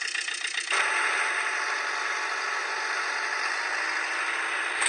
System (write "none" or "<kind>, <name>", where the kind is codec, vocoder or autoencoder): none